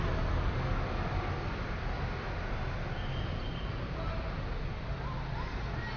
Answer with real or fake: real